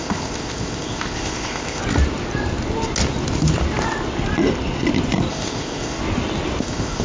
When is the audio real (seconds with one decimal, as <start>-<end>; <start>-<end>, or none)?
1.8-5.3; 6.0-6.6